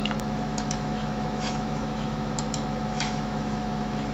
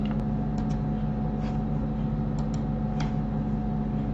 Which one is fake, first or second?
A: first